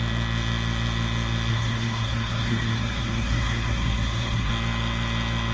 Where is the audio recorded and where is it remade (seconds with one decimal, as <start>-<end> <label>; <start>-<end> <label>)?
0.0-1.5 recorded; 1.5-4.5 remade; 4.5-5.5 recorded